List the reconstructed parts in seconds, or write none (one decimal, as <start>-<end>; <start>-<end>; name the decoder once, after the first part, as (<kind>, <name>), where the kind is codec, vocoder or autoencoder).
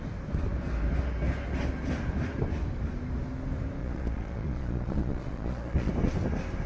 3.8-5.9 (vocoder, Vocos)